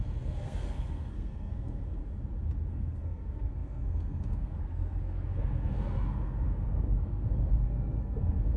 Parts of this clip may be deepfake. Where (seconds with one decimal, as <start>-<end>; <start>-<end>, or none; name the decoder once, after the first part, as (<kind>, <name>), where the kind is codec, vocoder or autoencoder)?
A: 0.0-2.0 (codec, SNAC); 2.7-8.6